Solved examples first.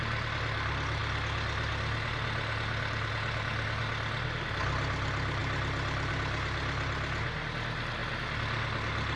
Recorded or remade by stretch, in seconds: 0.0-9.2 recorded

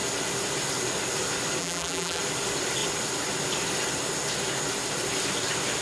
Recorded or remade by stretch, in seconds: 0.0-1.6 recorded; 1.6-2.2 remade; 2.2-5.8 recorded

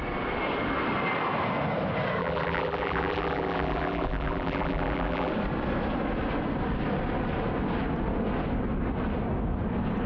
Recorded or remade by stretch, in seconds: 0.0-2.2 recorded; 2.2-5.3 remade; 5.3-10.1 recorded